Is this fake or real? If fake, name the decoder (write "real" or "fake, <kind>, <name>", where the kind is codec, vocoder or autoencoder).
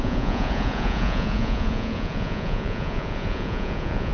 fake, vocoder, Vocos